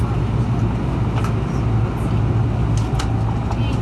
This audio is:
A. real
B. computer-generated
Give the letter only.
A